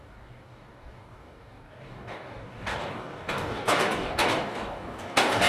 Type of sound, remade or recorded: remade